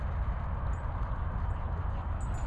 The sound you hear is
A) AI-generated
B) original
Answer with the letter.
B